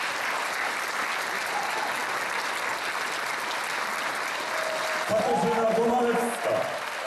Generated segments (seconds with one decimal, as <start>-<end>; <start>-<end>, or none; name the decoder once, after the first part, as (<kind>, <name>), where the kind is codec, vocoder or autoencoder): none